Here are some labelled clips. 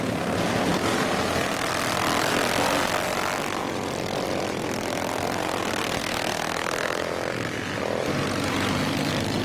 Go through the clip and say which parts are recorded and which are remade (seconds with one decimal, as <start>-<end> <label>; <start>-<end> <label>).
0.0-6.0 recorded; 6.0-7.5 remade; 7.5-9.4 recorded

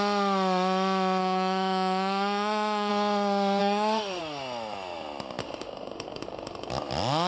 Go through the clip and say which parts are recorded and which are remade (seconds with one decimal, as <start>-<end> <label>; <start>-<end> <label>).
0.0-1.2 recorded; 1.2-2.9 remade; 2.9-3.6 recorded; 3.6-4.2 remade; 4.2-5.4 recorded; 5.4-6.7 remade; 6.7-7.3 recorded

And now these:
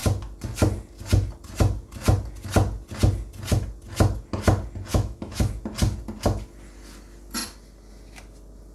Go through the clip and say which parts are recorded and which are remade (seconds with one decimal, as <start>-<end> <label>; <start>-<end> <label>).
0.0-4.9 recorded; 4.9-5.5 remade; 5.5-8.7 recorded